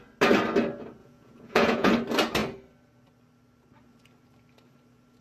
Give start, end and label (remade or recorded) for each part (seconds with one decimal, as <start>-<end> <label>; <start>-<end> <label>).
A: 0.0-1.0 recorded; 1.0-1.9 remade; 1.9-5.2 recorded